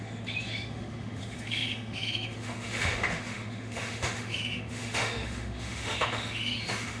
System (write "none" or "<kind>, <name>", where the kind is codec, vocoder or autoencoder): autoencoder, DAC-VAE